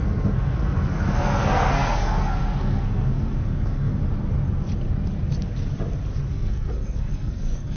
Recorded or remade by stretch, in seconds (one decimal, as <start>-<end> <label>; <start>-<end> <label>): 0.0-3.9 remade; 3.9-6.3 recorded; 6.3-7.8 remade